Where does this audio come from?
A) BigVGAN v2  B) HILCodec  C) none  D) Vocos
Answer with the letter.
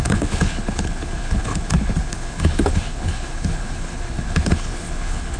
B